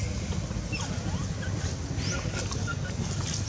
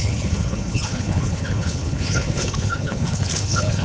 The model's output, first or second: second